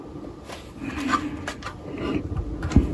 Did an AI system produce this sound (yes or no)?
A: no